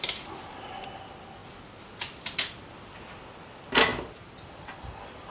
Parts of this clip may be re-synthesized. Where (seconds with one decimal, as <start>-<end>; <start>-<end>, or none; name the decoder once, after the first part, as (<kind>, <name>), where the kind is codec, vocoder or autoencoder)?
3.9-5.3 (vocoder, BigVGAN v2)